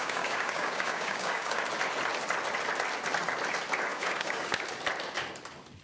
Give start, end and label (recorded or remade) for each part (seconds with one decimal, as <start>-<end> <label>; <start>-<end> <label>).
0.0-1.6 remade; 1.6-3.9 recorded; 3.9-4.6 remade; 4.6-5.8 recorded